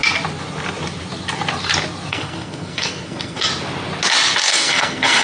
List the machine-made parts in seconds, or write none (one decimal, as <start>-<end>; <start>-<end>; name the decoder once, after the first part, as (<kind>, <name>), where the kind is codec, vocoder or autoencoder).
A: 2.1-3.5 (codec, SNAC); 4.5-5.2